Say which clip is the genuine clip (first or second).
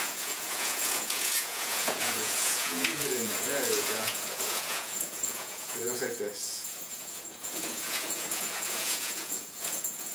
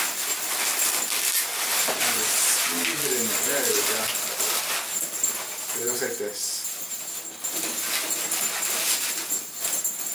second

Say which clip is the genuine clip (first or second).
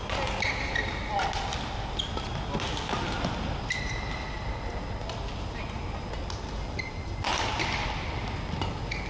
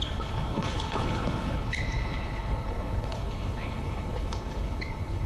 first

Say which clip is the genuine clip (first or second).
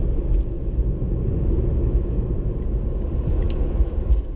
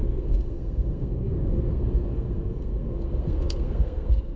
first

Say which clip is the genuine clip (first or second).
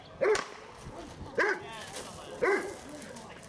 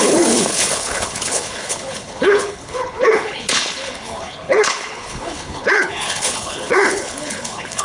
first